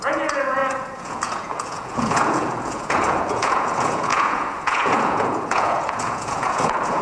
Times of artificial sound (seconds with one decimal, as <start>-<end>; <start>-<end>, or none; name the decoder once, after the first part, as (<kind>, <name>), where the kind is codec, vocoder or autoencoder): 0.0-7.0 (vocoder, Vocos)